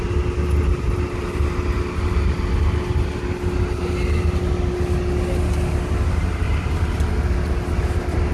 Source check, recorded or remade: recorded